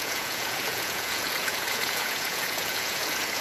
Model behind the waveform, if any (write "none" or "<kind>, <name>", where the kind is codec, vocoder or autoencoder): vocoder, Vocos